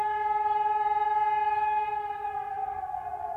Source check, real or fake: fake